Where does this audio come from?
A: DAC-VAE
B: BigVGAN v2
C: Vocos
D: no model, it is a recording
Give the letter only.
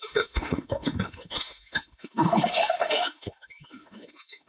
A